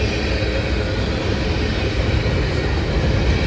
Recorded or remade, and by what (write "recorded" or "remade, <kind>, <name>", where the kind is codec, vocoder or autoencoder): recorded